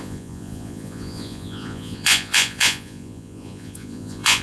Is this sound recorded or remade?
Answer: remade